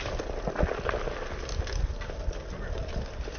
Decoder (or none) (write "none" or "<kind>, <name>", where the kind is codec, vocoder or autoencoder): none